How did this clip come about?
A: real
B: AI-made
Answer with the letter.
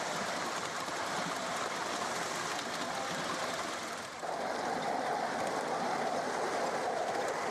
A